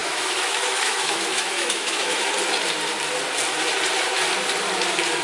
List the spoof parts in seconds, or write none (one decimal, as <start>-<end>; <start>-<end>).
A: 0.0-2.3